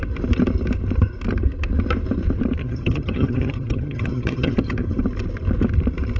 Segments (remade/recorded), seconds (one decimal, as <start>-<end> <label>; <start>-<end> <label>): 0.0-2.6 recorded; 2.6-5.0 remade; 5.0-6.2 recorded